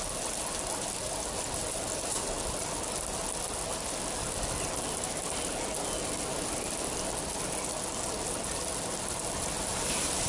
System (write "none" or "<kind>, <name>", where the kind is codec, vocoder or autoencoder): none